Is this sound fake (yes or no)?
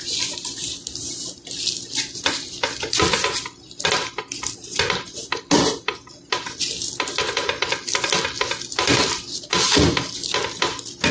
no